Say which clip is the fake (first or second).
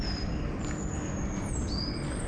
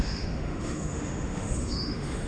second